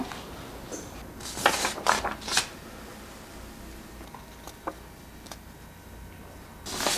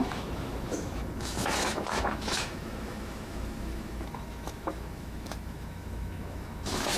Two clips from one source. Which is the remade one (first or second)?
second